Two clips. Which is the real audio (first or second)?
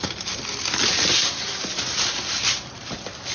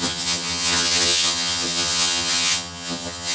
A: first